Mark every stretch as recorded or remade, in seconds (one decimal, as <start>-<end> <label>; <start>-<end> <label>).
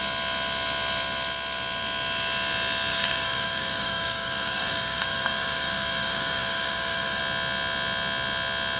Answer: 0.0-2.9 recorded; 2.9-7.2 remade; 7.2-8.8 recorded